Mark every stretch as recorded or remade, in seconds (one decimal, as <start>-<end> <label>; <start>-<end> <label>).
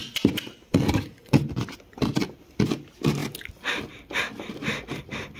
0.0-0.8 recorded; 0.8-5.4 remade